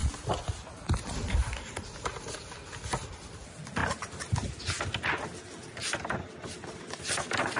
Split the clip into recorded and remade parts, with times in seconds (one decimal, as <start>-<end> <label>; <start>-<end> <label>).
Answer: 0.0-7.6 recorded